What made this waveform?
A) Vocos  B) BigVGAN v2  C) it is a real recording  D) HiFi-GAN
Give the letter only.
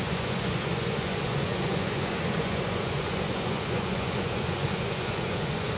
A